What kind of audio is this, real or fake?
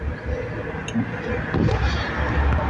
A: real